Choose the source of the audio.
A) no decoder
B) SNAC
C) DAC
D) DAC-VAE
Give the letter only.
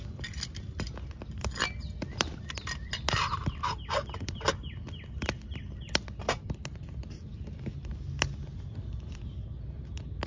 A